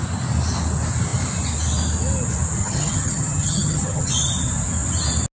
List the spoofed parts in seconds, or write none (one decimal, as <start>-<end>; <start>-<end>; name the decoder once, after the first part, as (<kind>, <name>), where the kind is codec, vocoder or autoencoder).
2.6-4.1 (vocoder, HiFi-GAN)